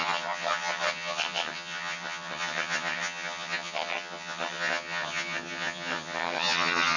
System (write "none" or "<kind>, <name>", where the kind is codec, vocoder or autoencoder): vocoder, HiFi-GAN